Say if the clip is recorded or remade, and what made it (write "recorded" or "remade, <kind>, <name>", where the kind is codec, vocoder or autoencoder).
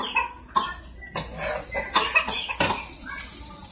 recorded